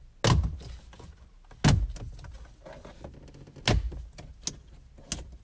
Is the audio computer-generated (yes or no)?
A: no